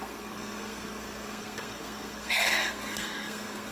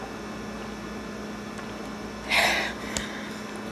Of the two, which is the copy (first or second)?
first